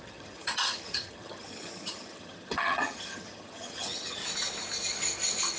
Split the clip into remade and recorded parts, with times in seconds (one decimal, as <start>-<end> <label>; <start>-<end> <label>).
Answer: 0.0-4.2 remade; 4.2-5.6 recorded